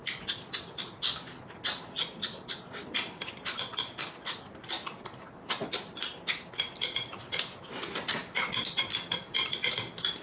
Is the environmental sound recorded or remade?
recorded